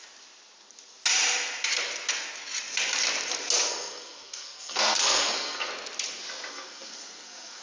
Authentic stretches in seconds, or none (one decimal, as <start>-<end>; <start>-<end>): 0.0-3.7; 5.7-6.5